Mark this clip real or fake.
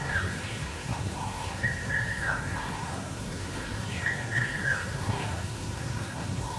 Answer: fake